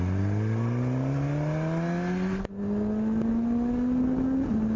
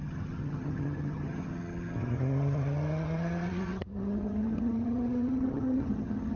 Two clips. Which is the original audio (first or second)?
first